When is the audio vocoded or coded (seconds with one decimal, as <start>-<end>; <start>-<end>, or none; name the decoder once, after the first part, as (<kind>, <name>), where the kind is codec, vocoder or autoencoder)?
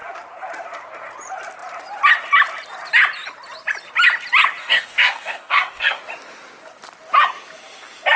4.6-6.0 (codec, DAC)